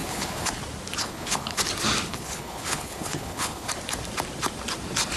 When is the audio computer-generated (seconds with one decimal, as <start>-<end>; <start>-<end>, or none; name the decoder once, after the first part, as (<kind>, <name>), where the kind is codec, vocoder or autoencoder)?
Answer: 0.0-0.5 (codec, HILCodec); 1.0-1.6; 2.1-3.7